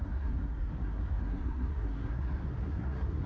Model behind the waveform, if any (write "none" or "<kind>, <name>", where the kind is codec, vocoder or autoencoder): codec, SNAC